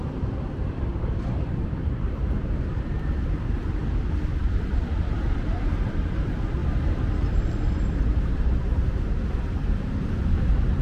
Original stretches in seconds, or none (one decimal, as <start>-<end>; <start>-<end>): 3.8-4.4; 6.6-7.7